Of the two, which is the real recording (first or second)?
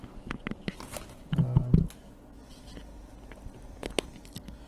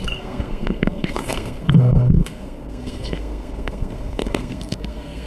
first